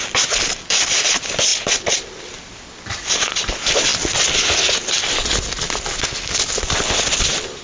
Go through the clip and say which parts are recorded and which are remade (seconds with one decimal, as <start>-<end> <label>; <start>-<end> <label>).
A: 0.0-7.6 recorded